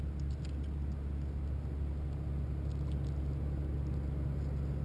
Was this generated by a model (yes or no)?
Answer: no